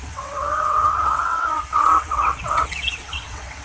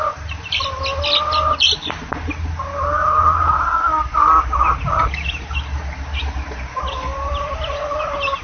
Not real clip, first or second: first